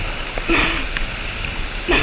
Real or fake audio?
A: real